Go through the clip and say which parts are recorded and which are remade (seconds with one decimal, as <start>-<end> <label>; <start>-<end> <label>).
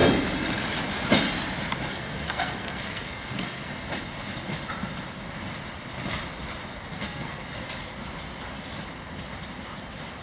0.0-1.9 recorded; 1.9-3.7 remade; 3.7-6.9 recorded; 6.9-7.4 remade; 7.4-10.2 recorded